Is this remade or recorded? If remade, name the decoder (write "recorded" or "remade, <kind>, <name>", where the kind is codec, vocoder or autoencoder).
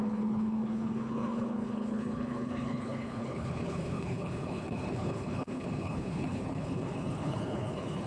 remade, codec, HILCodec